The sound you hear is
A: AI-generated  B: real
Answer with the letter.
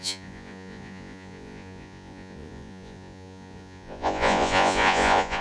A